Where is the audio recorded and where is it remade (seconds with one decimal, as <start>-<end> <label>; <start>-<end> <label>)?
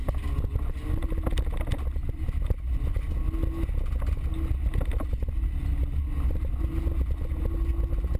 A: 0.0-8.2 recorded